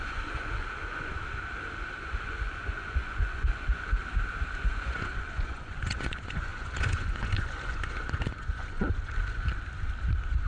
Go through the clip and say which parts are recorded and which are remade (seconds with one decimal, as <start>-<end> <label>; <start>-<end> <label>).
0.0-1.1 remade; 1.1-2.0 recorded; 2.0-4.0 remade; 4.0-4.6 recorded; 4.6-9.5 remade; 9.5-10.5 recorded